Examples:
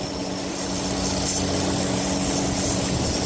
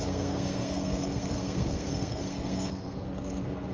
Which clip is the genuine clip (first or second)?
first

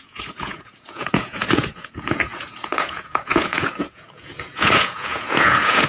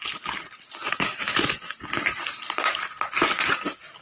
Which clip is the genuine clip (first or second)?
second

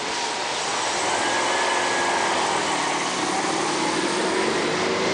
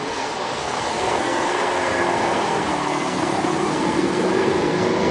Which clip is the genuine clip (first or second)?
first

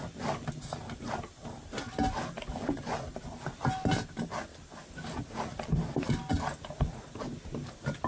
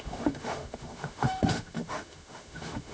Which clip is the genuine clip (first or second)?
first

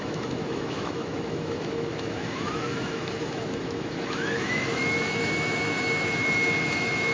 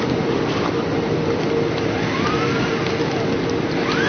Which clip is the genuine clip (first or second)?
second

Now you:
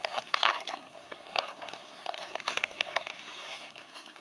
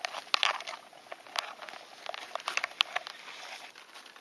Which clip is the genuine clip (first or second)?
second